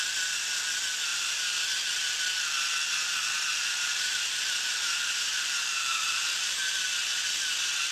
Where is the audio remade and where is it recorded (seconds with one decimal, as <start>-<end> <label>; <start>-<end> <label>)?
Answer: 0.0-1.1 recorded; 1.1-1.6 remade; 1.6-3.5 recorded; 3.5-6.8 remade; 6.8-7.9 recorded